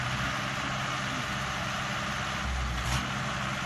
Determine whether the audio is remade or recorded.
recorded